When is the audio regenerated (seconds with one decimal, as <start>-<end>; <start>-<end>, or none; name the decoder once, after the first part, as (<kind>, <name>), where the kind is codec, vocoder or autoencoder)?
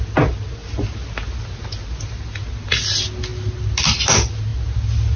none